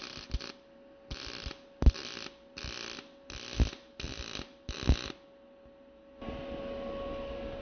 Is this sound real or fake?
real